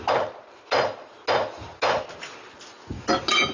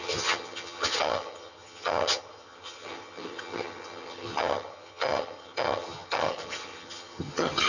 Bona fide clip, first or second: first